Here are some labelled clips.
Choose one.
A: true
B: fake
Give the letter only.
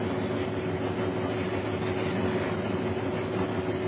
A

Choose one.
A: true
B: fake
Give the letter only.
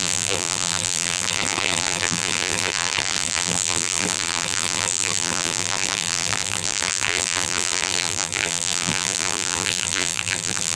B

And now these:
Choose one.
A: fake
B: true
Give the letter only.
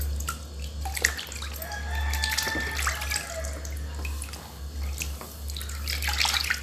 B